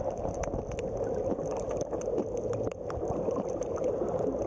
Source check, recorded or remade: recorded